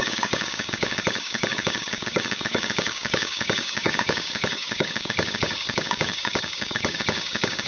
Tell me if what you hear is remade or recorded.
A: remade